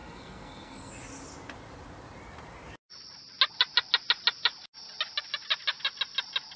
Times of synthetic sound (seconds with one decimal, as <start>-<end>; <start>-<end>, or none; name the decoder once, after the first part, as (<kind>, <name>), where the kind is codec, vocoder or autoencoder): 0.0-0.9 (codec, SNAC)